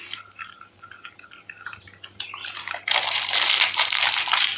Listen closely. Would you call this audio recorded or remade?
remade